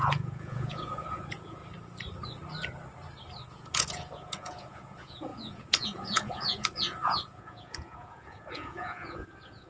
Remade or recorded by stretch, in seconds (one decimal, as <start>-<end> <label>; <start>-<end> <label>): 0.0-1.6 remade; 1.6-3.5 recorded; 3.5-9.7 remade